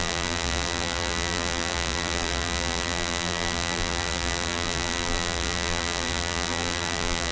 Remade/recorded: remade